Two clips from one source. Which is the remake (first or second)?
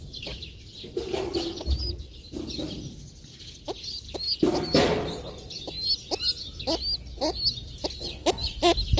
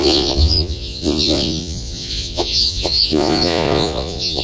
second